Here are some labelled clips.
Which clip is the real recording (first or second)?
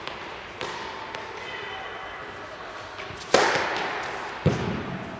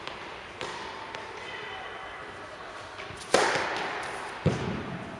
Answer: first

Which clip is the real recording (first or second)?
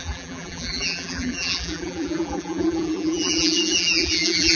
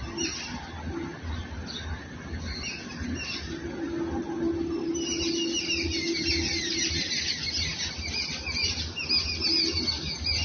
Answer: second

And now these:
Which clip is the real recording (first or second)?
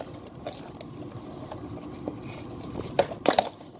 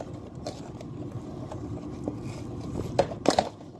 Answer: second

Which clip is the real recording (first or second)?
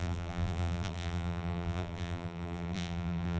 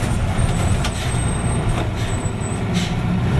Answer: second